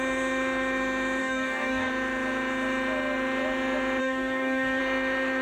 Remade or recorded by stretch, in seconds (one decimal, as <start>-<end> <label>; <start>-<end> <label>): 0.0-1.2 recorded; 1.2-1.9 remade; 1.9-4.0 recorded; 4.0-4.8 remade; 4.8-5.4 recorded